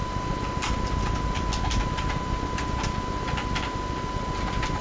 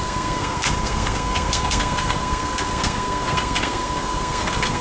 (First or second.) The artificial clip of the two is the second